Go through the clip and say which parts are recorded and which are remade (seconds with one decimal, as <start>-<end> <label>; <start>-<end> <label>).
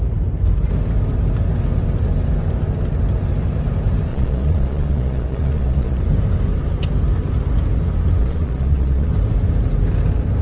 0.0-4.1 recorded; 4.1-6.0 remade; 6.0-8.2 recorded; 8.2-9.1 remade; 9.1-10.4 recorded